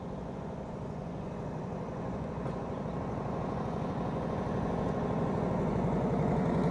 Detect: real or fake fake